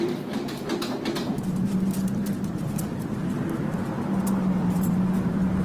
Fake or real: fake